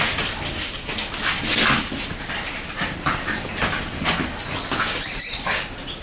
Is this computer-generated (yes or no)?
no